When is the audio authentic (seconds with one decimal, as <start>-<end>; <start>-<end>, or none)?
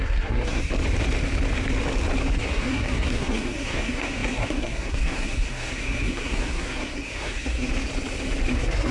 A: 0.6-2.3; 7.7-8.5